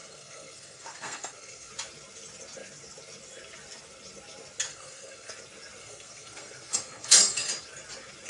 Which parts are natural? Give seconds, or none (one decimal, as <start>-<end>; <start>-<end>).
1.7-4.7; 5.3-5.8; 7.5-8.3